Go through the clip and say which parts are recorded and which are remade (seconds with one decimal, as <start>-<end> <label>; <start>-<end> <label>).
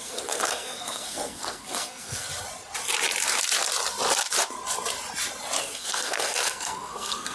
0.0-2.3 remade; 2.3-5.6 recorded; 5.6-7.3 remade